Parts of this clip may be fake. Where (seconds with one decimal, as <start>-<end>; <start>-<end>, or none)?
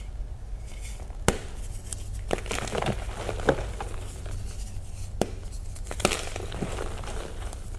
none